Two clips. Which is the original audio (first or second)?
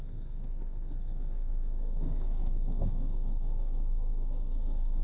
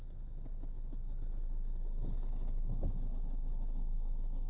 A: second